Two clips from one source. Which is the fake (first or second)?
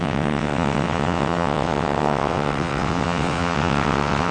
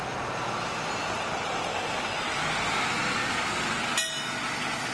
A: first